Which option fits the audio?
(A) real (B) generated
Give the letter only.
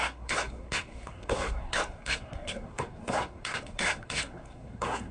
B